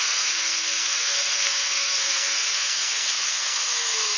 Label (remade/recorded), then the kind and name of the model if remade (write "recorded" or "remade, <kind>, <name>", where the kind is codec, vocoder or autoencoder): remade, codec, SNAC